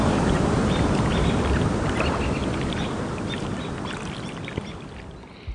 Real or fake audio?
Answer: real